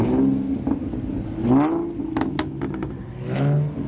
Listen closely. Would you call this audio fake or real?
real